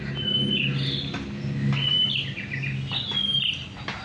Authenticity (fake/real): real